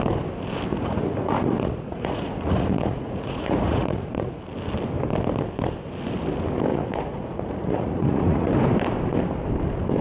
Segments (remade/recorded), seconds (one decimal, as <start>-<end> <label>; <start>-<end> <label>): 0.0-0.7 recorded; 0.7-4.4 remade; 4.4-6.7 recorded; 6.7-8.5 remade; 8.5-10.0 recorded